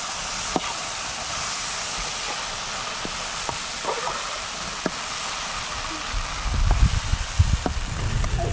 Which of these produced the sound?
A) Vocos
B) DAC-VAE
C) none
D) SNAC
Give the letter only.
C